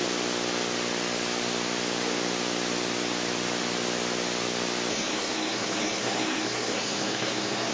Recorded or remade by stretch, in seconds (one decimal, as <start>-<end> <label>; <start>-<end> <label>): 0.0-4.9 recorded; 4.9-7.7 remade